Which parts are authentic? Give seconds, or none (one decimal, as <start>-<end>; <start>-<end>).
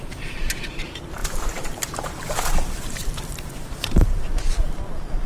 none